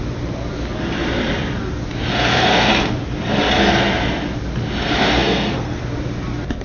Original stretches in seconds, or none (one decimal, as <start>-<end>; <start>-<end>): 0.0-2.1; 2.7-5.0; 5.8-6.6